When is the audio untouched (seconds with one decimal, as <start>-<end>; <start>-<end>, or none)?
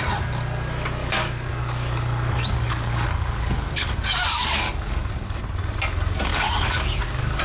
0.0-1.0; 5.4-6.3